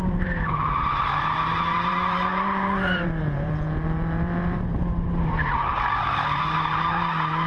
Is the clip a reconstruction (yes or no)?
yes